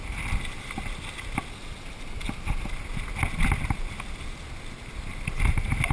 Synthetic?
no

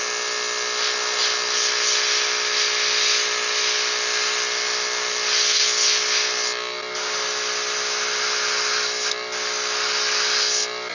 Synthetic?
no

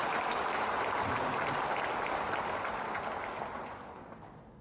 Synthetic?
no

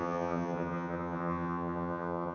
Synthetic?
yes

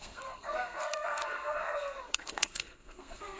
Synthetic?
yes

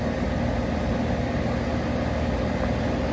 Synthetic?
no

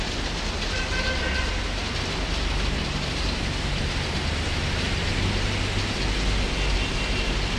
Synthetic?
no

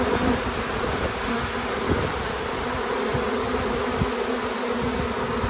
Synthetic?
no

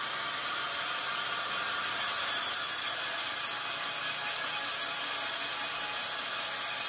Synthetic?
no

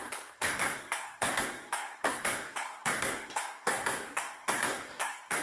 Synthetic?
yes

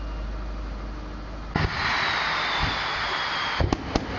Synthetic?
no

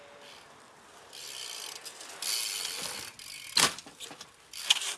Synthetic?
no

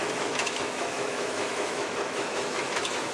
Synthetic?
yes